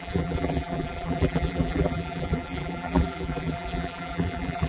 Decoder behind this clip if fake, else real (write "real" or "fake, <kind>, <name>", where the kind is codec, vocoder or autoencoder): fake, vocoder, BigVGAN v2